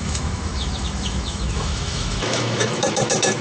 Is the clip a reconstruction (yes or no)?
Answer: yes